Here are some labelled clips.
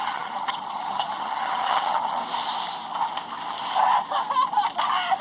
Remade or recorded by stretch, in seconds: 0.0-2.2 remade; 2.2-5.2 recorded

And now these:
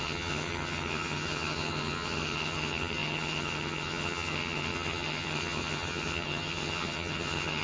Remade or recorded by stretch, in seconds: 0.0-7.6 remade

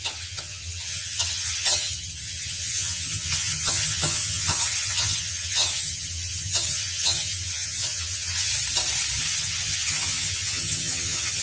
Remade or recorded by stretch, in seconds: 0.0-8.5 remade; 8.5-9.2 recorded; 9.2-11.4 remade

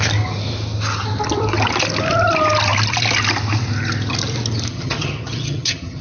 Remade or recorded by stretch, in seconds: 0.0-4.7 recorded; 4.7-6.0 remade

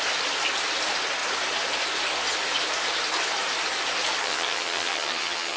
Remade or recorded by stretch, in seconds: 0.0-4.2 recorded; 4.2-5.6 remade